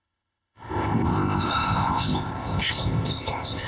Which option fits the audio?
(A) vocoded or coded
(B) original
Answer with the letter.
A